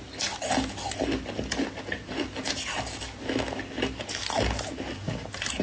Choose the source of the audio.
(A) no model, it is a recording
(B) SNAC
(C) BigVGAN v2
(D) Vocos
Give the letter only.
A